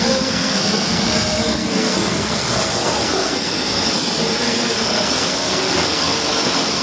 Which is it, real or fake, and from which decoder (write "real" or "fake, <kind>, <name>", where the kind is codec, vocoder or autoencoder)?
fake, codec, SNAC